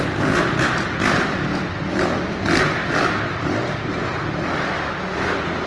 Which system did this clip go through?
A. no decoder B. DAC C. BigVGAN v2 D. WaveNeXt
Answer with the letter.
A